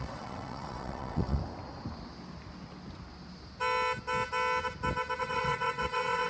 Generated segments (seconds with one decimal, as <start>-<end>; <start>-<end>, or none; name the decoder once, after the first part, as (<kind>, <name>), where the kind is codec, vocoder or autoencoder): 0.0-1.4 (vocoder, WaveNeXt); 5.2-6.3